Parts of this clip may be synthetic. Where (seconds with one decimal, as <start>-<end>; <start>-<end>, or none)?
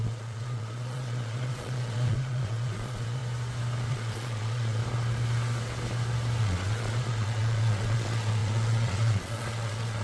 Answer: 0.0-3.2; 3.9-4.8; 6.4-10.0